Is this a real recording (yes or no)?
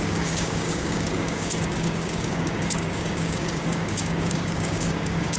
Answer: no